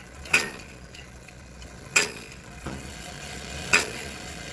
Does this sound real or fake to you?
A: fake